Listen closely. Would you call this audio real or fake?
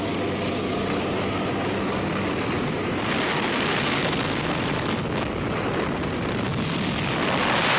real